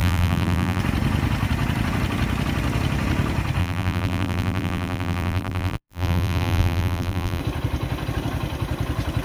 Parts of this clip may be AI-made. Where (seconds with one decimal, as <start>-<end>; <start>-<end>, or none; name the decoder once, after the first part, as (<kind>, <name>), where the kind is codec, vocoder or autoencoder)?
0.0-0.8 (vocoder, BigVGAN v2); 3.6-7.4

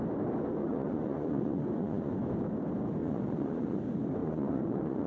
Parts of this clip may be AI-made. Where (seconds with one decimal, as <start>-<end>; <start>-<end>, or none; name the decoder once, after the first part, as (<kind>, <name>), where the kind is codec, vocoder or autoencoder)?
0.6-2.1 (vocoder, Vocos); 3.0-3.8; 4.2-5.1

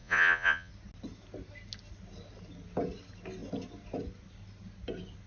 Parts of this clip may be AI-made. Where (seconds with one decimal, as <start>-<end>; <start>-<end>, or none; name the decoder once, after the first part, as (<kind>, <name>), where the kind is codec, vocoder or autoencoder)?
0.0-0.7 (vocoder, Vocos)

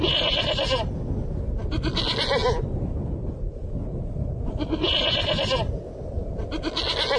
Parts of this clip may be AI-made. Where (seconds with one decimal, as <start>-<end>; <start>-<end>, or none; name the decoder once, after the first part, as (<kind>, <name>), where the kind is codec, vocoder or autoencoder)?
none

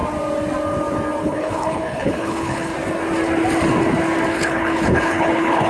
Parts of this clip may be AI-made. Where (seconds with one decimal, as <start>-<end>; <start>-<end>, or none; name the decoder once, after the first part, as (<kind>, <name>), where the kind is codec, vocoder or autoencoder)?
1.2-2.7 (codec, HILCodec); 4.3-5.7

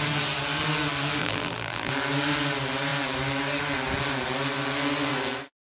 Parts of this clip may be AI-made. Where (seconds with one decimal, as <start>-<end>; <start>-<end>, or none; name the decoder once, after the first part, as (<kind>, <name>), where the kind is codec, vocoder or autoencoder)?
1.2-1.9 (vocoder, BigVGAN v2)

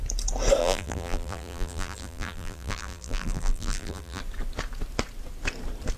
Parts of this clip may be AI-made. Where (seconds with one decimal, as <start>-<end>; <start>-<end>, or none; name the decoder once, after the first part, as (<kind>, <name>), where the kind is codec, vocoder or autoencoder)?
0.6-4.2 (vocoder, BigVGAN v2)

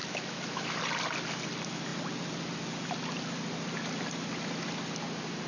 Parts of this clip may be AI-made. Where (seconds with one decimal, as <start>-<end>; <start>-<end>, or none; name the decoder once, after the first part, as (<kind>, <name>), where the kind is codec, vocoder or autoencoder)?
0.0-0.8 (autoencoder, DAC-VAE)